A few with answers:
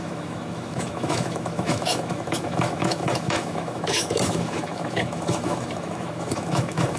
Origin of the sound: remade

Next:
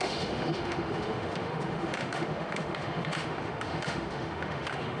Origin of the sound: remade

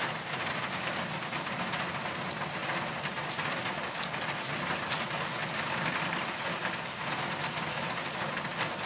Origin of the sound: recorded